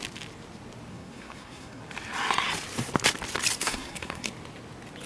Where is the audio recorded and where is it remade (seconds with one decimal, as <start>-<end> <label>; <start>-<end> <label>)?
0.0-0.9 recorded; 0.9-1.8 remade; 1.8-3.6 recorded; 3.6-4.3 remade; 4.3-5.1 recorded

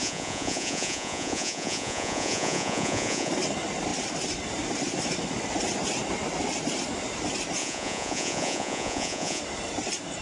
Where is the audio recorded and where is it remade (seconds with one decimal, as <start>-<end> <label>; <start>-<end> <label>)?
0.0-3.3 remade; 3.3-7.6 recorded; 7.6-9.4 remade; 9.4-10.2 recorded

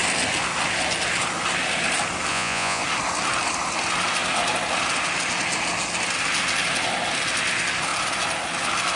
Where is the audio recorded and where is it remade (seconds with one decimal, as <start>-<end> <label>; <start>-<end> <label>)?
0.0-2.3 recorded; 2.3-2.8 remade; 2.8-9.0 recorded

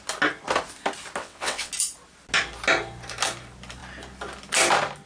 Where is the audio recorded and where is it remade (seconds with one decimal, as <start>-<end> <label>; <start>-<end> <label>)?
0.0-1.2 recorded; 1.2-1.7 remade; 1.7-5.1 recorded

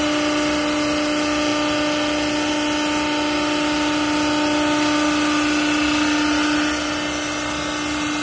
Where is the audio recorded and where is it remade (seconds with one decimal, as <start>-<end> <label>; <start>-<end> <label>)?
0.0-8.2 recorded

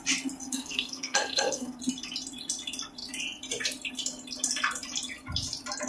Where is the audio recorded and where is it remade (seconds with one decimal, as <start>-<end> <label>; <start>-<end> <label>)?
0.0-0.5 recorded; 0.5-1.8 remade; 1.8-5.9 recorded

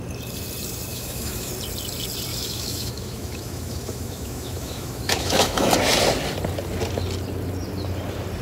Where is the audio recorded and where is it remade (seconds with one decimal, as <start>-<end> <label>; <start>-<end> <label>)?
0.0-0.9 recorded; 0.9-1.5 remade; 1.5-2.3 recorded; 2.3-5.7 remade; 5.7-8.4 recorded